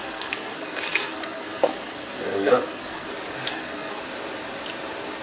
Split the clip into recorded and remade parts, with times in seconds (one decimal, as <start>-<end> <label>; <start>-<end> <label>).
0.0-3.1 remade; 3.1-3.5 recorded; 3.5-4.0 remade; 4.0-5.2 recorded

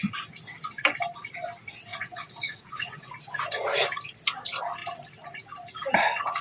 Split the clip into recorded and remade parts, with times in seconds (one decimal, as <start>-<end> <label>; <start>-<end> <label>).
0.0-1.9 recorded; 1.9-3.1 remade; 3.1-6.4 recorded

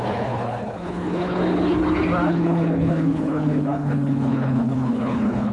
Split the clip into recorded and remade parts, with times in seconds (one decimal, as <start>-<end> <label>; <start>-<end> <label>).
0.0-1.4 remade; 1.4-2.3 recorded; 2.3-5.5 remade

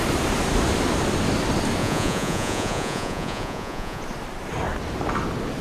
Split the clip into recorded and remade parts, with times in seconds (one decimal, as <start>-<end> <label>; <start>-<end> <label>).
0.0-1.8 recorded; 1.8-4.0 remade; 4.0-5.6 recorded

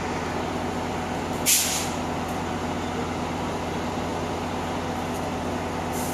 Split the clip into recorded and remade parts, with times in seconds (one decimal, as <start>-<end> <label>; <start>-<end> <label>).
0.0-6.1 recorded